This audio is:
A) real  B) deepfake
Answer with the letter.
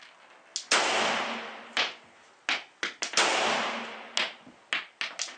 A